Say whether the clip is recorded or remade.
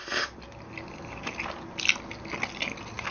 recorded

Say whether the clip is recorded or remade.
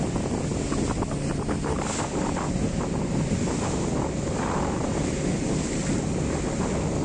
recorded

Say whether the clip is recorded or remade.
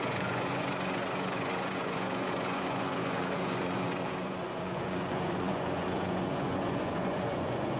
remade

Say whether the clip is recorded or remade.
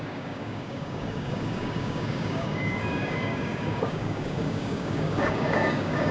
remade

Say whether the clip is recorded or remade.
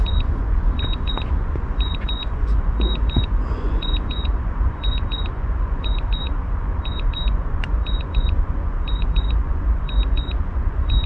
remade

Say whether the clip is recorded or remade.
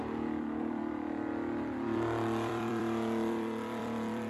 remade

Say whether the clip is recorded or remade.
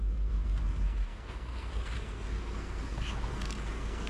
remade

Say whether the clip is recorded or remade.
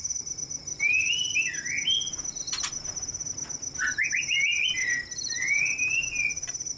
recorded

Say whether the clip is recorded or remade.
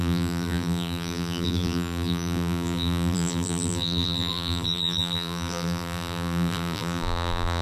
remade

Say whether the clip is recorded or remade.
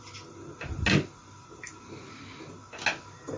recorded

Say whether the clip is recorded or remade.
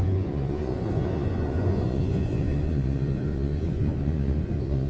remade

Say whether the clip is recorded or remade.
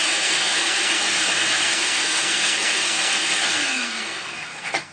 remade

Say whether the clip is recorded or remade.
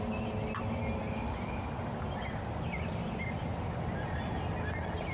recorded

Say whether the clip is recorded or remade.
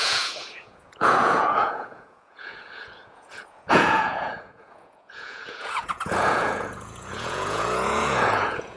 remade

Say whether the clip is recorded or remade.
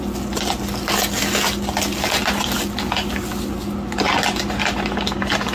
recorded